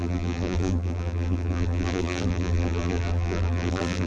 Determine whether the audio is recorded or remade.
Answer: remade